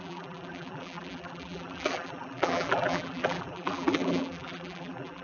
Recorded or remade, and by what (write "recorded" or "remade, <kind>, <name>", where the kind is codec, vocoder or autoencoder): remade, vocoder, BigVGAN v2